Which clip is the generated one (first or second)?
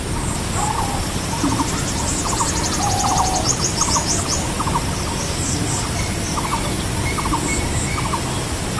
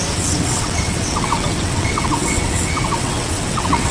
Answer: second